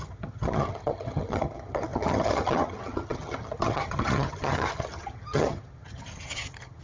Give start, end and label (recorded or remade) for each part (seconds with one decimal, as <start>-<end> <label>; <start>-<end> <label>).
0.0-6.8 remade